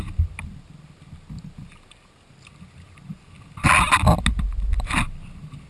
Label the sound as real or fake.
real